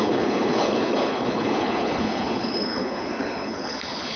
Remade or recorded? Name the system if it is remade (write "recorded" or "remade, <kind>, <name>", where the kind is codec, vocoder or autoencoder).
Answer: remade, codec, HILCodec